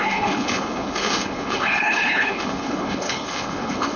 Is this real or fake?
fake